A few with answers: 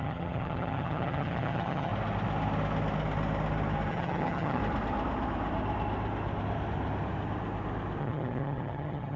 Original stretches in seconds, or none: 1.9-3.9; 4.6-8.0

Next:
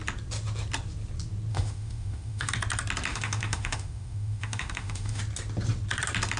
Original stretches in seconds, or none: 0.0-1.5; 2.5-3.1; 5.2-6.4

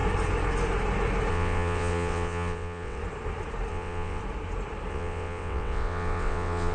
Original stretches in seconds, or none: 0.0-1.3; 3.0-3.7; 4.2-4.9

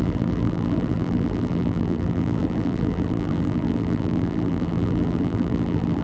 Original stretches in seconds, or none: none

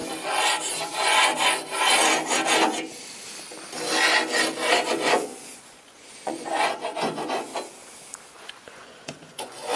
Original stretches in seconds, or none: 0.0-0.7; 1.3-4.9; 7.5-8.3

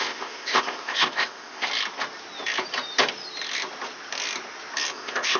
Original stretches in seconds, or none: 1.7-4.9

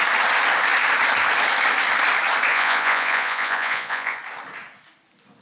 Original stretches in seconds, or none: 0.0-2.5; 4.2-5.4